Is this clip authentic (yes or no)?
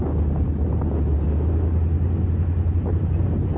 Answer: yes